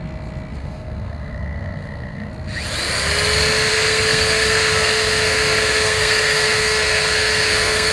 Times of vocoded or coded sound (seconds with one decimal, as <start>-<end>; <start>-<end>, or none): 0.5-2.3; 3.7-7.9